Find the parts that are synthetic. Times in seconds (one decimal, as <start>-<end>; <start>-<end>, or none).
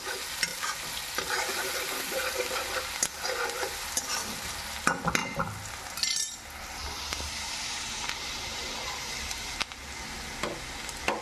0.5-3.0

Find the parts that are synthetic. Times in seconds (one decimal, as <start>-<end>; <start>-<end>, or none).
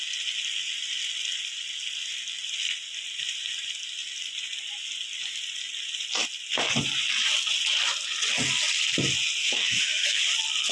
9.4-10.2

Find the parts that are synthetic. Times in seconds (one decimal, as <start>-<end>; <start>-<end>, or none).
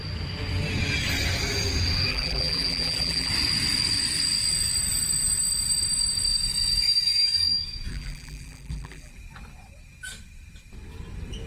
2.1-3.3; 7.9-9.1